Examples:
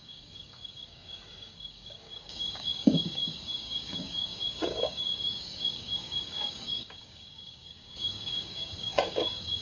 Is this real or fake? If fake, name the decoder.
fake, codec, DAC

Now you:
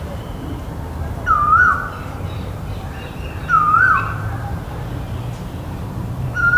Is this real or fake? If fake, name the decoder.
fake, vocoder, BigVGAN v2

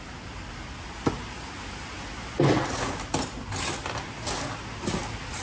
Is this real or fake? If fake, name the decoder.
real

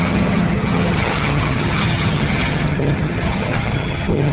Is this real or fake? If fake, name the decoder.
fake, vocoder, HiFi-GAN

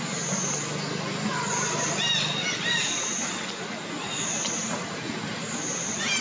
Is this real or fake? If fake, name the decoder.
real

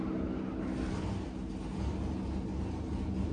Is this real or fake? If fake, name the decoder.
real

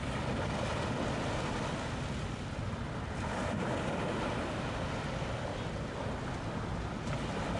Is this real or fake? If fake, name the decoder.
real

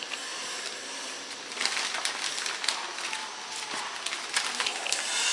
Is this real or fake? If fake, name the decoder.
real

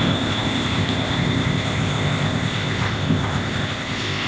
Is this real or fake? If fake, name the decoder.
fake, codec, ZipCodec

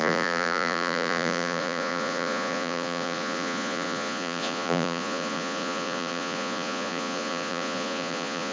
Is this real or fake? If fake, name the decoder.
fake, vocoder, Vocos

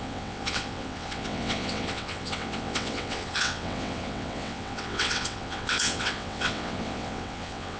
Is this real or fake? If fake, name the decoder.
fake, vocoder, WaveNeXt